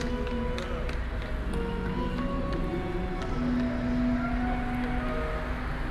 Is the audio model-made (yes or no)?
no